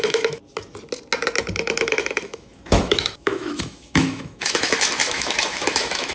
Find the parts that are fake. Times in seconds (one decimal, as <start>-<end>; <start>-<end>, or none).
0.0-0.4; 1.5-6.1

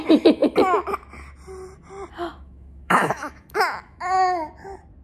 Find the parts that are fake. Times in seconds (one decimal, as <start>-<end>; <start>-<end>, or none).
2.3-4.0

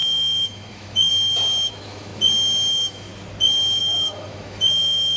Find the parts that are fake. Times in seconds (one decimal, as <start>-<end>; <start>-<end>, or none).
0.0-1.1; 1.7-2.1; 2.7-3.1; 3.8-5.2

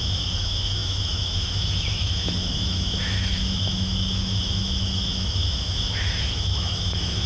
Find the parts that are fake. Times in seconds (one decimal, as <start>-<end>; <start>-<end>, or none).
0.0-7.3